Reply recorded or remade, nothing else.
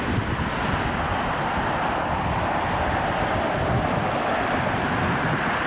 recorded